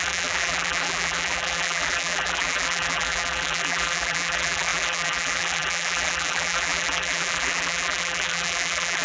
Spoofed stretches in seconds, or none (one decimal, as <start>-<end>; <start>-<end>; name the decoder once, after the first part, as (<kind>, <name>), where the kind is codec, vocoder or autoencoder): 0.0-9.0 (vocoder, BigVGAN v2)